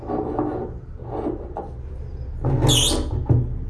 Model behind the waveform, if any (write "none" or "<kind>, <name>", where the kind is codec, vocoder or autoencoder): none